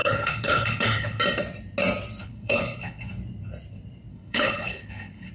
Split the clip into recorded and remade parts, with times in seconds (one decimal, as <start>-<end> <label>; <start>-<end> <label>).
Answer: 0.0-1.2 remade; 1.2-2.2 recorded; 2.2-3.1 remade; 3.1-4.1 recorded; 4.1-5.3 remade

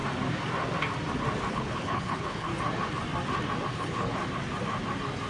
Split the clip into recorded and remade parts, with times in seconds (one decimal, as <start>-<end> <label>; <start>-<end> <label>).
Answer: 0.0-1.5 recorded; 1.5-2.5 remade; 2.5-3.7 recorded; 3.7-4.2 remade; 4.2-5.3 recorded